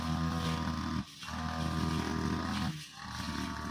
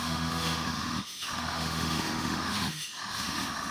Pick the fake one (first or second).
second